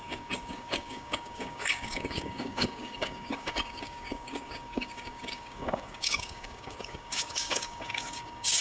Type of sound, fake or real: fake